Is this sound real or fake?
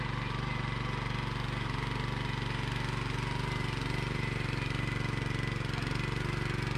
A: real